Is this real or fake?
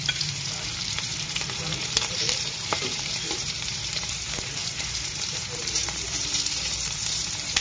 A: fake